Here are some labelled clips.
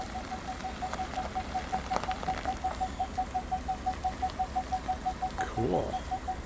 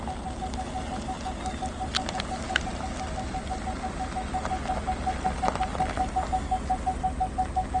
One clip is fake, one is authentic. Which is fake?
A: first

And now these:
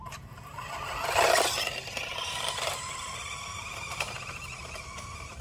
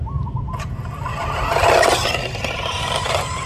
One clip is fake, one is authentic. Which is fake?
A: first